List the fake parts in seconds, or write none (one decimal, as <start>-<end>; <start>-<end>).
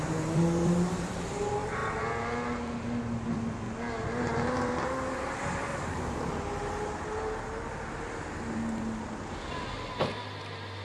none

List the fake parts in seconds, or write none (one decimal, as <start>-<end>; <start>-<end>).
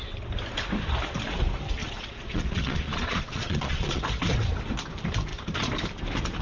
1.8-4.0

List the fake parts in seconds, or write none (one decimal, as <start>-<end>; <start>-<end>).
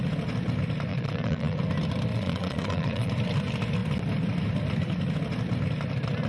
0.9-1.6; 2.1-3.1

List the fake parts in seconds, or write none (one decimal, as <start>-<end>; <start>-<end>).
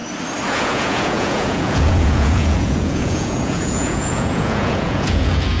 0.5-5.6